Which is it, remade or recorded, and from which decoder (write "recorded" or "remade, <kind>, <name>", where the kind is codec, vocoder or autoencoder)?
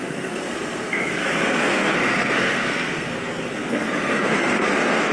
remade, codec, SNAC